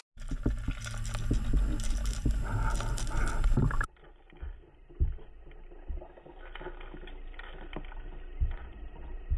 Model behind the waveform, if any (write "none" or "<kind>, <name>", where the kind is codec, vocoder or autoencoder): none